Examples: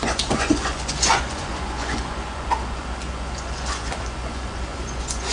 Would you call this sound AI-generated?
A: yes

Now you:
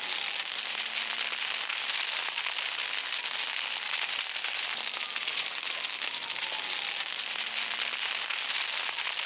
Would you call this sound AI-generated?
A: no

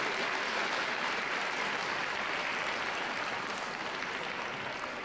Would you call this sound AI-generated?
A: no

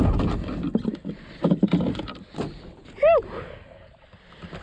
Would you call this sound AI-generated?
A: no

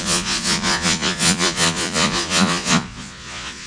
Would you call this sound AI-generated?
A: yes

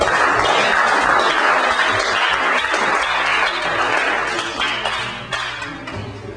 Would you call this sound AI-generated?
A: no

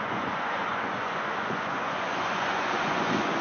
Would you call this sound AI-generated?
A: yes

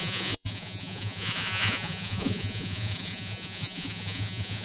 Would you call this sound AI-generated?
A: yes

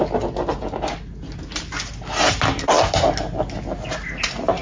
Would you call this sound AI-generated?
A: no